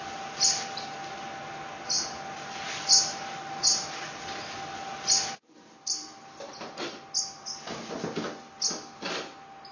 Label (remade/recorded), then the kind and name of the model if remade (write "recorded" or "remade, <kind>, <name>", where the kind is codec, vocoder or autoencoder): recorded